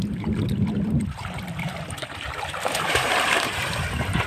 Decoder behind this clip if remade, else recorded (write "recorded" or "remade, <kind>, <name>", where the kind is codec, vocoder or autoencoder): remade, vocoder, BigVGAN v2